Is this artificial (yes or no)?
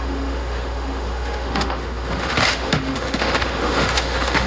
yes